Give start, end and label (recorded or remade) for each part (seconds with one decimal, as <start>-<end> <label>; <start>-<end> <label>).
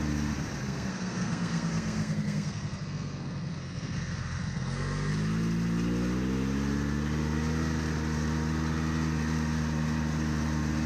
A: 0.0-0.6 recorded; 0.6-5.1 remade; 5.1-10.9 recorded